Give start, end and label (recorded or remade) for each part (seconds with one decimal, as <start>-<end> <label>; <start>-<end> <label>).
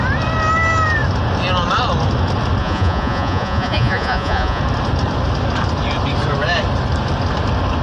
0.0-2.6 recorded; 2.6-4.6 remade; 4.6-7.8 recorded